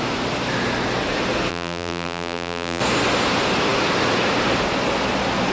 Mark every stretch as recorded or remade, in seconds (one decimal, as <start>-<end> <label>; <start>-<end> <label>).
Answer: 0.0-1.5 recorded; 1.5-2.8 remade; 2.8-5.5 recorded